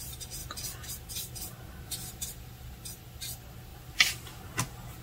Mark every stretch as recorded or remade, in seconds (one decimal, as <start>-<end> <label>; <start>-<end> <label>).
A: 0.0-0.4 recorded; 0.4-2.2 remade; 2.2-3.7 recorded; 3.7-4.4 remade; 4.4-5.0 recorded